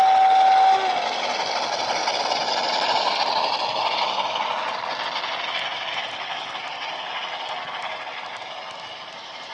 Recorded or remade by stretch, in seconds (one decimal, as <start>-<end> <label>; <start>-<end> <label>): 0.0-9.5 recorded